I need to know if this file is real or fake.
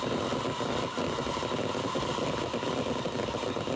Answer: fake